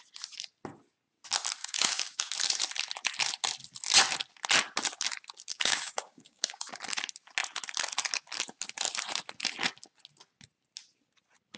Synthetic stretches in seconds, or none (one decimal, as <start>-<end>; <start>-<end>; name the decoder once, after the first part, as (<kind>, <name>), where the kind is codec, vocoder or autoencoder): 1.6-2.3 (codec, DAC); 5.5-6.7